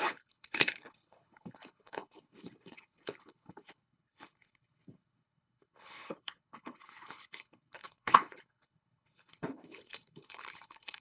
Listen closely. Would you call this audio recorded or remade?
remade